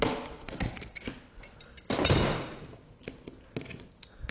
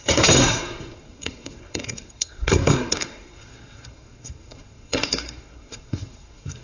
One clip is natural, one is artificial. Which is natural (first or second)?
first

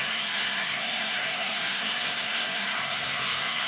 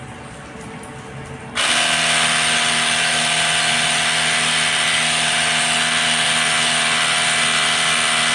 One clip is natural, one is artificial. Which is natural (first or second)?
second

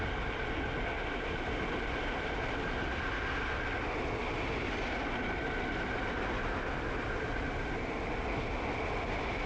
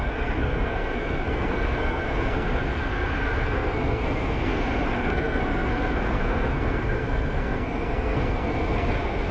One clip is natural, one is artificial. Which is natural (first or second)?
first